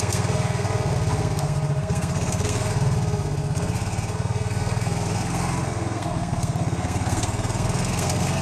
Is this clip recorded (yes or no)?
no